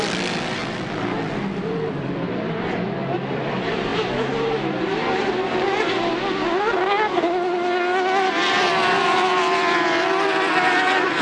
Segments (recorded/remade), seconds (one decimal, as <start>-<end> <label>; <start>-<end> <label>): 0.0-0.6 remade; 0.6-1.7 recorded; 1.7-3.9 remade; 3.9-8.7 recorded; 8.7-11.2 remade